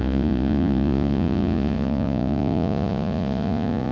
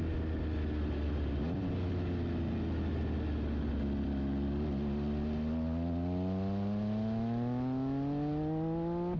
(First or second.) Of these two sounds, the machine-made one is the first